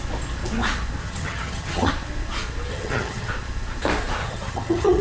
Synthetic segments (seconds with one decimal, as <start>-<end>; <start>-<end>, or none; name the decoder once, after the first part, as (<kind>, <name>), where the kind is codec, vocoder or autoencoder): 1.0-1.9 (vocoder, HiFi-GAN); 2.7-3.3; 4.2-5.0

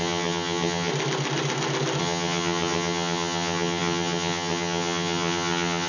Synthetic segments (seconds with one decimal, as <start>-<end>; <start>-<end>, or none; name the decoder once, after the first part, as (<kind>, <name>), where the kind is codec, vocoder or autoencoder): 0.0-0.9 (vocoder, HiFi-GAN); 2.0-5.9

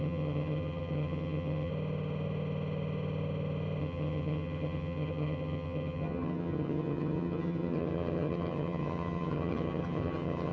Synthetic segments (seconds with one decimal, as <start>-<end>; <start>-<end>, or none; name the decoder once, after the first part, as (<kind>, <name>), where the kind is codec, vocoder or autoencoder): 0.0-1.7 (vocoder, HiFi-GAN); 3.8-10.5

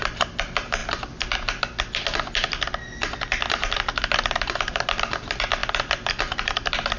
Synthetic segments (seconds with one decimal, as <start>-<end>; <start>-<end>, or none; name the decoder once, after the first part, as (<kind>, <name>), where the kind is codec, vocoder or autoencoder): none

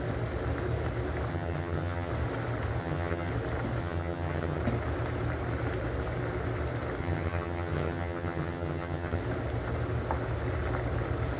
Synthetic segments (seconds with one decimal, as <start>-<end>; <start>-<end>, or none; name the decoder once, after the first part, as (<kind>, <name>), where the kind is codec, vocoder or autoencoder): 1.3-2.1 (vocoder, HiFi-GAN); 2.8-3.3; 3.8-4.6; 7.0-9.2